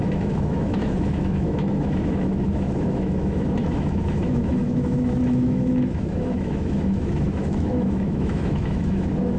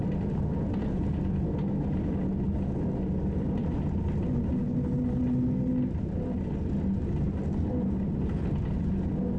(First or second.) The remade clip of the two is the first